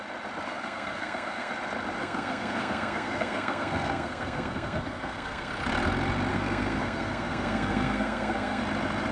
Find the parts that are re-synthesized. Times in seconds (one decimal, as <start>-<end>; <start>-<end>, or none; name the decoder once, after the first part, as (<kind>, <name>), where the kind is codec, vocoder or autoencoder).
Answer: 0.5-1.5 (codec, SNAC); 2.0-5.5; 6.3-8.6